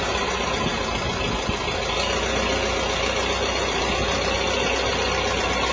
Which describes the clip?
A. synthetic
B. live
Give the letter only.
B